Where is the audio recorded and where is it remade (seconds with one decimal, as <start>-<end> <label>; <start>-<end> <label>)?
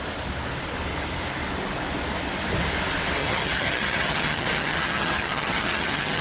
0.0-3.2 recorded; 3.2-6.2 remade